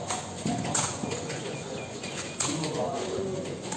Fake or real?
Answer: fake